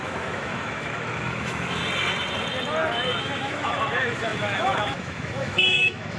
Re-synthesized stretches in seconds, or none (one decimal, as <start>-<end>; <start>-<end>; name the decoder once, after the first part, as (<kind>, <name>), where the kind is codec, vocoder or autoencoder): 0.0-1.8 (autoencoder, DAC-VAE); 3.2-6.2